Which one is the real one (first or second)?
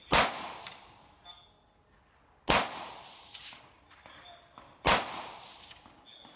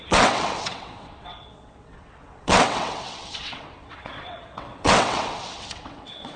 first